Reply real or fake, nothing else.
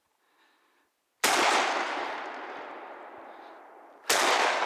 real